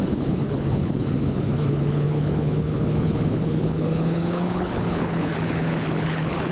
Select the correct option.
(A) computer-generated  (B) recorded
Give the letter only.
A